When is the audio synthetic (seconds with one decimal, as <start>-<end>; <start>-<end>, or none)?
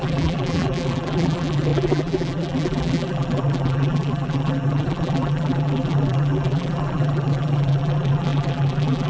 0.0-9.1